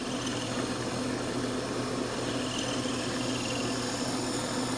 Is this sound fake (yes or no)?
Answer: no